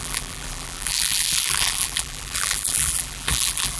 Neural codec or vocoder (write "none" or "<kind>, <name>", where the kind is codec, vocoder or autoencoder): vocoder, BigVGAN v2